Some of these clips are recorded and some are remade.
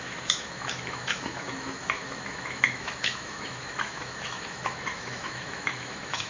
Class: remade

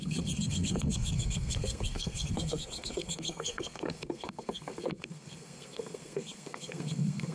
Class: remade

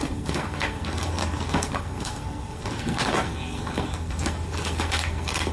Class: remade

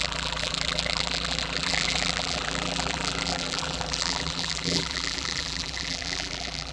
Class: remade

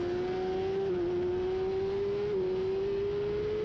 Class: recorded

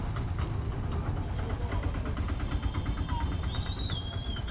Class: recorded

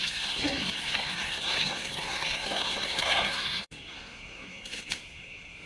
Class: remade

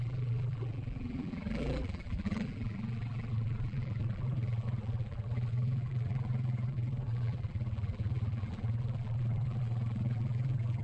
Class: remade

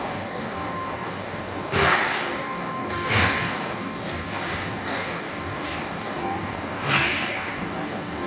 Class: remade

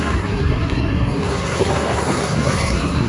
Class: remade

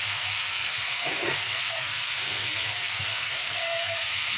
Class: remade